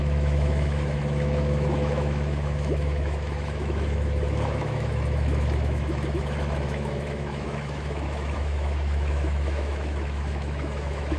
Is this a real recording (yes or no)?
no